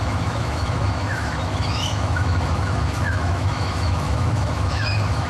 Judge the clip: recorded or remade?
remade